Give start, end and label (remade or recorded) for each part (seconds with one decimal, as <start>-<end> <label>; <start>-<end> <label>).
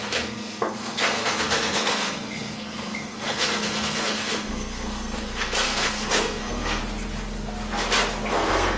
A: 0.0-6.8 remade; 6.8-8.3 recorded; 8.3-8.8 remade